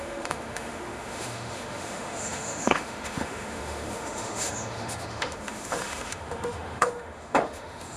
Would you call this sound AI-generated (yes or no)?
yes